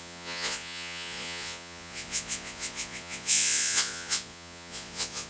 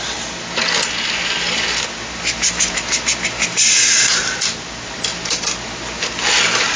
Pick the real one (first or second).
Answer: second